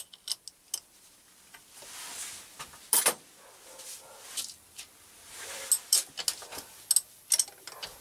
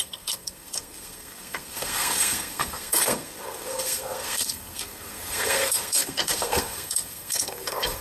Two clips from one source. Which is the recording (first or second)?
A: first